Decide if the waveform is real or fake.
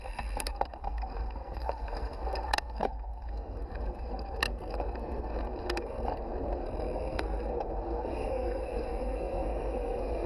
fake